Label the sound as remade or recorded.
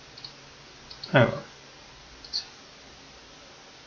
recorded